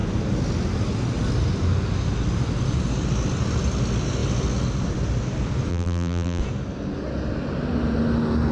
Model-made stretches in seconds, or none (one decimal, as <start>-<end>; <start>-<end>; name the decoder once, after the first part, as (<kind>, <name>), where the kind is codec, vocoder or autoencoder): 5.7-6.4 (vocoder, BigVGAN v2)